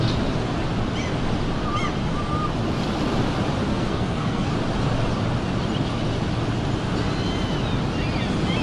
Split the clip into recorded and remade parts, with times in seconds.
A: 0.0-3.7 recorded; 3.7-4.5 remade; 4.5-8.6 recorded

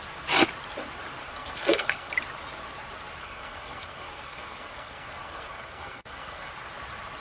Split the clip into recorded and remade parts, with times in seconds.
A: 0.0-1.2 recorded; 1.2-2.1 remade; 2.1-3.2 recorded; 3.2-6.5 remade; 6.5-7.2 recorded

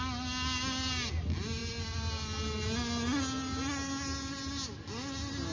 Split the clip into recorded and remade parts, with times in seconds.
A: 0.0-5.5 recorded